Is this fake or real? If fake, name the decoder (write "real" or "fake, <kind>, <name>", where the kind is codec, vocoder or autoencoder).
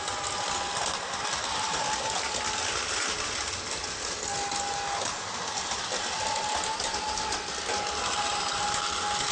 real